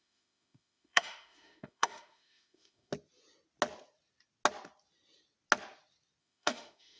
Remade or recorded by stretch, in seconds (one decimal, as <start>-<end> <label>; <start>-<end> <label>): 0.0-2.9 remade; 2.9-6.2 recorded; 6.2-7.0 remade